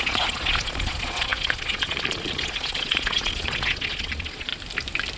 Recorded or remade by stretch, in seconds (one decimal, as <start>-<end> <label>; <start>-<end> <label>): 0.0-4.5 remade; 4.5-5.2 recorded